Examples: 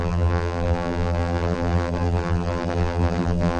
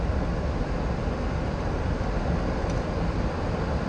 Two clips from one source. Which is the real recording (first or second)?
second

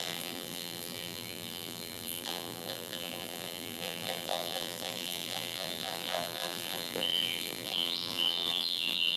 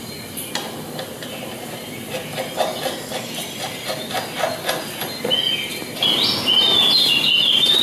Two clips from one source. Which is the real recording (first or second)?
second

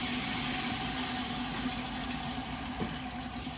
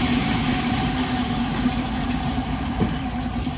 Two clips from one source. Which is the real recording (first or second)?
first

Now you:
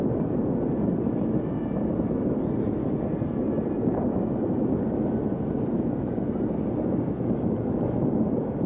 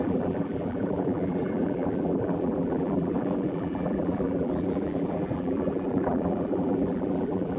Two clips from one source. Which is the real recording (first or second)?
first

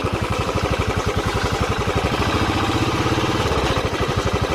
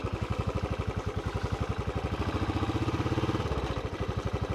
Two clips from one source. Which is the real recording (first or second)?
second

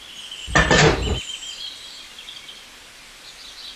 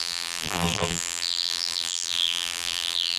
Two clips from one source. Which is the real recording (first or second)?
first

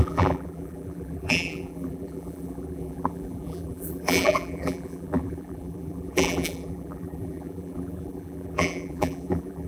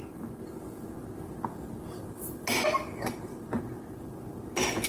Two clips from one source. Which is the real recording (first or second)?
second